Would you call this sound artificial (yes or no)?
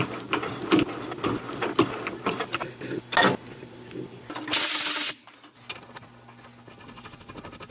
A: no